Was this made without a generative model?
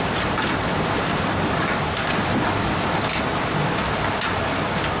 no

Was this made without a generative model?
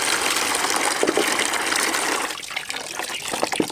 yes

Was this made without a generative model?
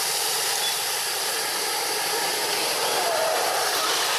no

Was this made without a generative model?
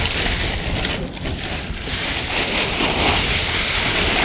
no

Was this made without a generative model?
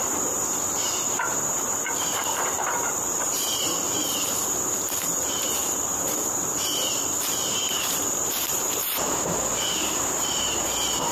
no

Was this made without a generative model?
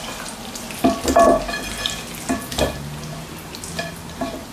yes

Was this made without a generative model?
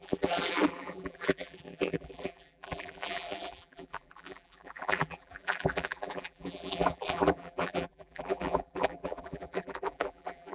no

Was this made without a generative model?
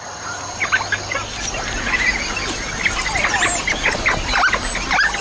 yes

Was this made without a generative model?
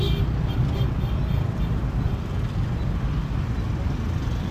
no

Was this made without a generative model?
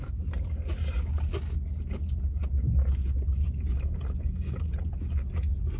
yes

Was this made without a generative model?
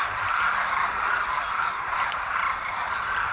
yes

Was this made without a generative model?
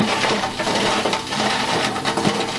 no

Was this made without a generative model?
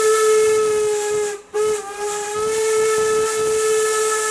yes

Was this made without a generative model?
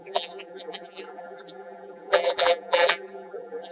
no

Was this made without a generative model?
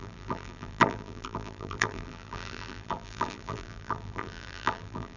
no